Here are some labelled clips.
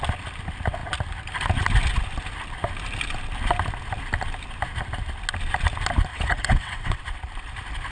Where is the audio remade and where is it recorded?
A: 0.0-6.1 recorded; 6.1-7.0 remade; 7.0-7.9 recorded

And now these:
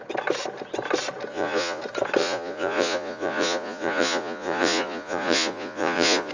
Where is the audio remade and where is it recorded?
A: 0.0-1.3 recorded; 1.3-1.8 remade; 1.8-2.2 recorded; 2.2-6.3 remade

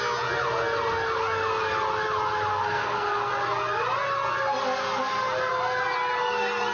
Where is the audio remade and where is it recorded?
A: 0.0-2.5 recorded; 2.5-3.3 remade; 3.3-6.7 recorded

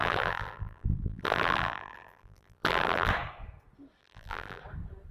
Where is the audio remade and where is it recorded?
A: 0.0-3.1 remade; 3.1-4.0 recorded; 4.0-4.6 remade; 4.6-5.1 recorded

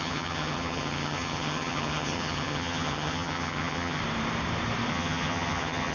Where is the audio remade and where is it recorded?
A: 0.0-4.0 remade; 4.0-4.9 recorded; 4.9-5.9 remade

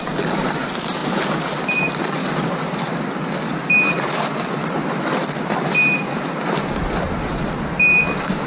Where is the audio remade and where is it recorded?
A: 0.0-8.5 recorded

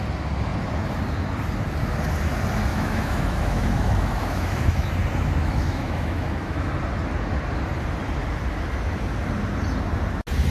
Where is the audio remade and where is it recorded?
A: 0.0-2.7 recorded; 2.7-4.9 remade; 4.9-5.4 recorded; 5.4-6.7 remade; 6.7-10.5 recorded